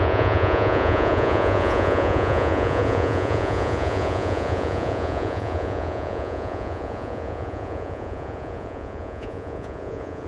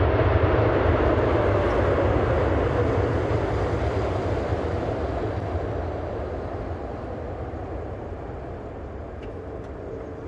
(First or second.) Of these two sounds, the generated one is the first